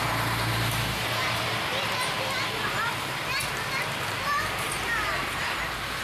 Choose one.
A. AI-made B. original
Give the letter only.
B